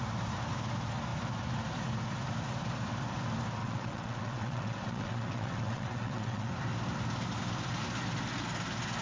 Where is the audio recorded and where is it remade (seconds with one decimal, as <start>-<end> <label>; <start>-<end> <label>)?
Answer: 0.0-3.6 recorded; 3.6-6.5 remade; 6.5-9.0 recorded